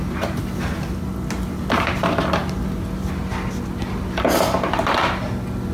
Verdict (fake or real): real